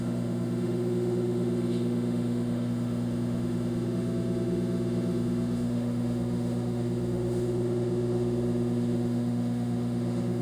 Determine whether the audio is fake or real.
fake